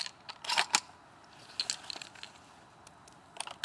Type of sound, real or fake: real